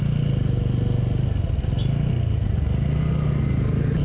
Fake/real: real